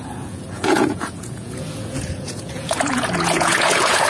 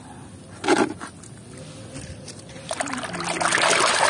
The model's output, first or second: first